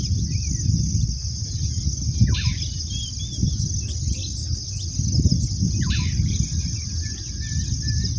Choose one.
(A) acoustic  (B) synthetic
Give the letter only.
A